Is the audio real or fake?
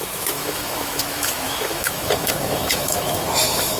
fake